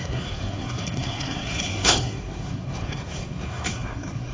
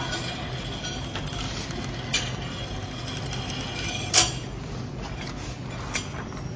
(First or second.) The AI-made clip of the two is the first